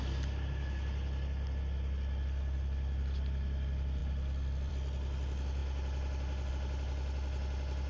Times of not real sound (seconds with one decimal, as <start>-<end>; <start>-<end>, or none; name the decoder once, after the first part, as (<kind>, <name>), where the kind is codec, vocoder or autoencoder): none